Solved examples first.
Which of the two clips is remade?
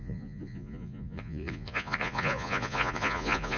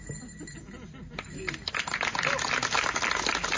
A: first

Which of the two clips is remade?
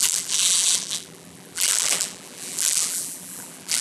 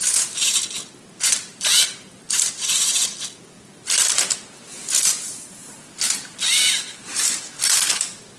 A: first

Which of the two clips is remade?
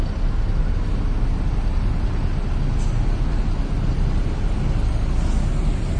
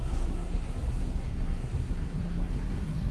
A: second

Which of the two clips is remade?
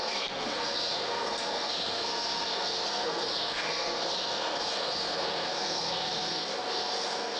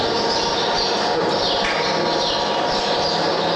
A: first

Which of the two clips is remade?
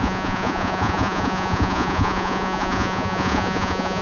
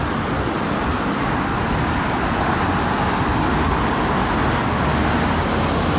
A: first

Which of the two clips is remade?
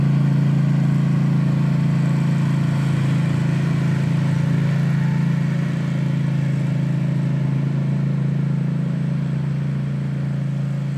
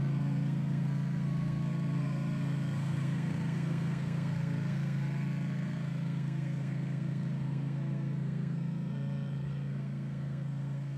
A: second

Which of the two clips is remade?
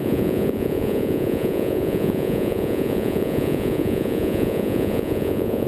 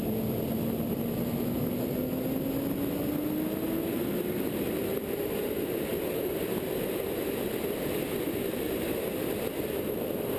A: first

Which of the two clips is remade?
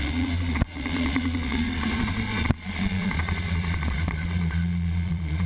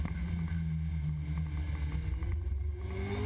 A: first